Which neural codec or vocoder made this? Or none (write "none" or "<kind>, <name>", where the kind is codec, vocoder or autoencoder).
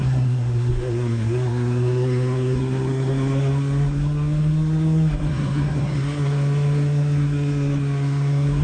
codec, SNAC